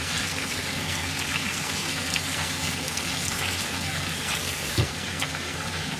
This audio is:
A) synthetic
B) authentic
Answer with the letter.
A